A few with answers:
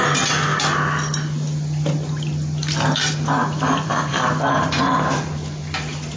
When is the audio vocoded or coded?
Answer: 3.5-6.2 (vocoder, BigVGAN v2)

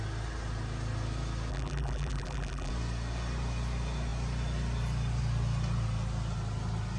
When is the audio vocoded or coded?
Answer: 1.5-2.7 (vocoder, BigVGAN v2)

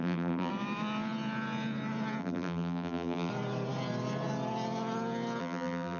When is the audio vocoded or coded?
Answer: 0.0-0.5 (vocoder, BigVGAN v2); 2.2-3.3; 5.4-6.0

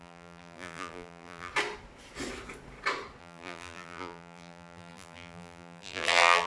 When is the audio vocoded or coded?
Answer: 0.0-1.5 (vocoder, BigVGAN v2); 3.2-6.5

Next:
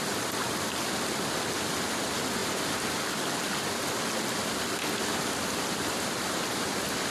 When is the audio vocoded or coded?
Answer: 2.4-2.9 (vocoder, BigVGAN v2)

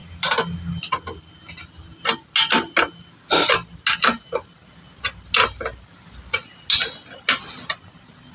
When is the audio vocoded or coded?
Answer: none

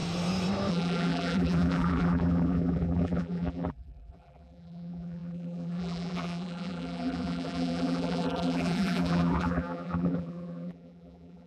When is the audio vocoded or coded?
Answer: 0.7-11.5 (vocoder, BigVGAN v2)

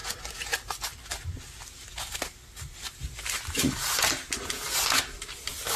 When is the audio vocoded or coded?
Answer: none